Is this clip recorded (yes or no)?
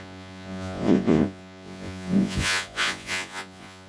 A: no